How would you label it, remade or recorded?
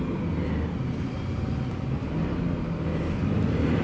recorded